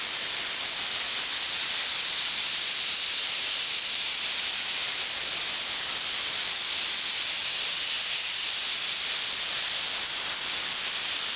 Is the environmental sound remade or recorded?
recorded